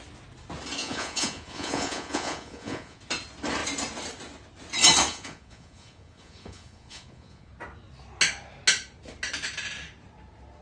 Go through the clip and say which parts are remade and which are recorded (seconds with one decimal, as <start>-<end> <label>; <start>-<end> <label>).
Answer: 0.0-0.8 recorded; 0.8-3.0 remade; 3.0-5.1 recorded; 5.1-7.5 remade; 7.5-10.6 recorded

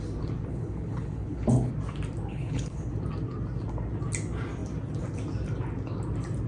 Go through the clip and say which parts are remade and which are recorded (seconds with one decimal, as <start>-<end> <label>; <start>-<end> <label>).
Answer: 0.0-0.5 recorded; 0.5-1.7 remade; 1.7-2.3 recorded; 2.3-2.9 remade; 2.9-6.5 recorded

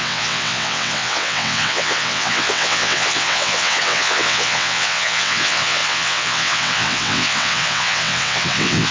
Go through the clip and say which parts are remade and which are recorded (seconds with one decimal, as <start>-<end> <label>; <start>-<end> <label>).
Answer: 0.0-8.9 remade

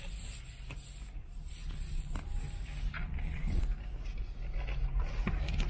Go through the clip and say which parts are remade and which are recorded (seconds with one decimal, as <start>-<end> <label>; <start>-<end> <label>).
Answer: 0.0-1.2 recorded; 1.2-2.1 remade; 2.1-3.0 recorded; 3.0-3.6 remade; 3.6-5.7 recorded

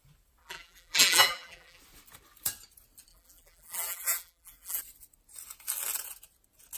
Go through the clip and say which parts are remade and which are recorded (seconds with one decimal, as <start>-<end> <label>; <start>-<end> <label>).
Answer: 0.0-0.4 recorded; 0.4-1.8 remade; 1.8-3.1 recorded; 3.1-4.8 remade; 4.8-6.8 recorded

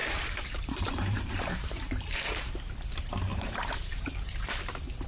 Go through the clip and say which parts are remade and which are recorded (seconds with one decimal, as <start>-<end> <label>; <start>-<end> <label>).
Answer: 0.0-2.5 remade; 2.5-3.3 recorded; 3.3-4.1 remade; 4.1-5.1 recorded

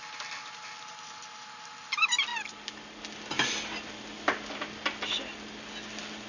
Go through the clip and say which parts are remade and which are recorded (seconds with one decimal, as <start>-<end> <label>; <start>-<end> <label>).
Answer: 0.0-6.3 recorded